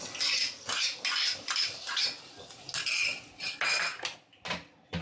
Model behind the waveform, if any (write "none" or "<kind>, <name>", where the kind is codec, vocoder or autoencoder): none